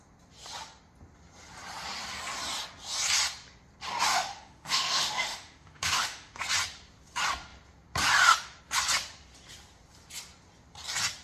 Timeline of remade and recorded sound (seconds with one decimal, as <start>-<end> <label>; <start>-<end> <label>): 0.0-4.1 recorded; 4.1-6.4 remade; 6.4-11.2 recorded